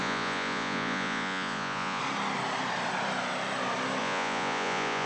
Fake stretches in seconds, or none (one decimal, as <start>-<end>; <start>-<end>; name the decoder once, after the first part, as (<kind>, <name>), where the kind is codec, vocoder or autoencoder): 0.0-2.0 (vocoder, Vocos); 4.0-5.1